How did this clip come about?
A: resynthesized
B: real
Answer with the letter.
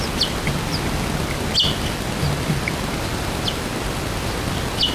B